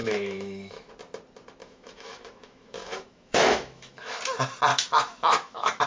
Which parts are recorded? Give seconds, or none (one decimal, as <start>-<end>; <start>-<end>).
0.9-1.6; 4.2-4.7